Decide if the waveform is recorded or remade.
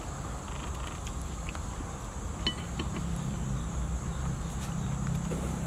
recorded